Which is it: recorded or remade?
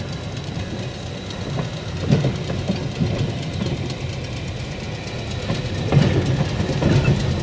recorded